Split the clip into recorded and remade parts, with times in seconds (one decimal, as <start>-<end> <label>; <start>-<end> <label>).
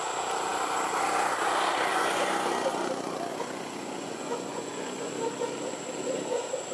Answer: 0.0-1.9 recorded; 1.9-2.5 remade; 2.5-3.3 recorded; 3.3-5.1 remade; 5.1-6.7 recorded